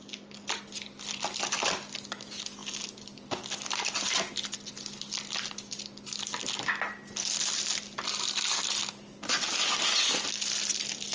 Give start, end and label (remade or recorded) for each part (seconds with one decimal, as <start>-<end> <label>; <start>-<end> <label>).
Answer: 0.0-11.1 recorded